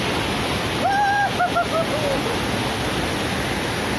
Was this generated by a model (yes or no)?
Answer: no